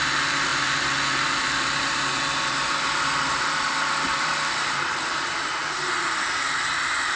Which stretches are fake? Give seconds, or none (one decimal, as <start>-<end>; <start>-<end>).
0.0-5.6